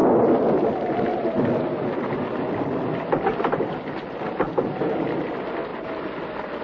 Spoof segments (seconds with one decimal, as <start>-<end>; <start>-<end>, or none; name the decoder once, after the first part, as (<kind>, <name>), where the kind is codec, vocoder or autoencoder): none